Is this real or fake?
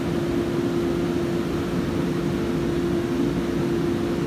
real